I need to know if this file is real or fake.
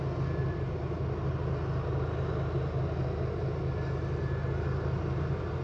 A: real